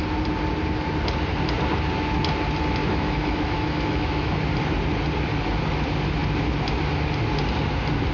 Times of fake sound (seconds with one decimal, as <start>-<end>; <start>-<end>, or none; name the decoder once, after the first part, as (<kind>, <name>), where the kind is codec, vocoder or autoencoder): 2.8-4.3 (autoencoder, DAC-VAE)